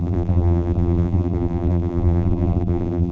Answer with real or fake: fake